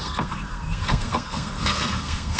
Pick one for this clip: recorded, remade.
remade